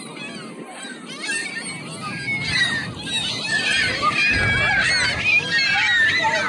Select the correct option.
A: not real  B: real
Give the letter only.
B